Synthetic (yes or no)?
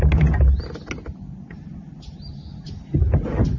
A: no